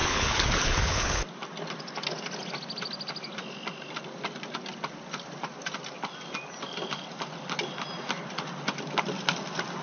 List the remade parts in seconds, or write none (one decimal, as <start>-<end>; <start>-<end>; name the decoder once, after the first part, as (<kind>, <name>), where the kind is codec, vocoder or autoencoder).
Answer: 0.0-1.2 (codec, HILCodec)